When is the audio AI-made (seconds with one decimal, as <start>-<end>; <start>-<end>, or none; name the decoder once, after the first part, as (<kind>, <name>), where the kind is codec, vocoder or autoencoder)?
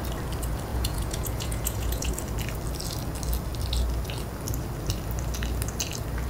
0.7-2.1 (vocoder, Vocos)